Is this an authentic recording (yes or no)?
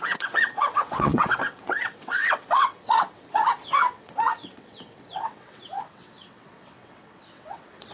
no